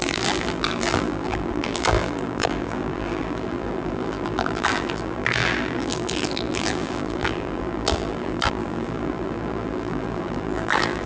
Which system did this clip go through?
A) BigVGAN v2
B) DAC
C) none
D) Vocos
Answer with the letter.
A